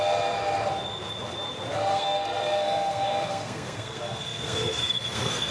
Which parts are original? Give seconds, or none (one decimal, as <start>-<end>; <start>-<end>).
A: 0.0-1.9